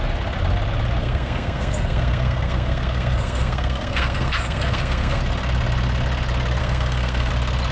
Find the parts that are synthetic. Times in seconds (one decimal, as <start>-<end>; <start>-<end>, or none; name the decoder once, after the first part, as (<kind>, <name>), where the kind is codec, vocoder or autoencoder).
1.0-5.2 (codec, SNAC); 6.6-7.3